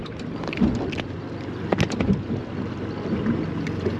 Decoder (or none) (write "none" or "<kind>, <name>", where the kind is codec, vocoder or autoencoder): none